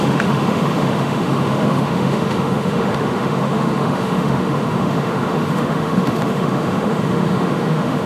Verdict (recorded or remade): remade